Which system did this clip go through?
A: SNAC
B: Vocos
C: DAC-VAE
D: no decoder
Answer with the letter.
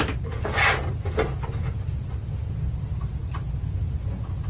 D